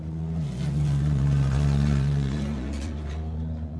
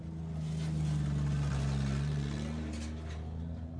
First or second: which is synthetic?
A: first